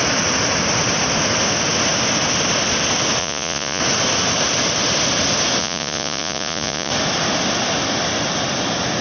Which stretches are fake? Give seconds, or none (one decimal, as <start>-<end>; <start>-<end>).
3.2-3.8; 5.6-6.9